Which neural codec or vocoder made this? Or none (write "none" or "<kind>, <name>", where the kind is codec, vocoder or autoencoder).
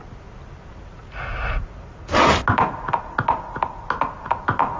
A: none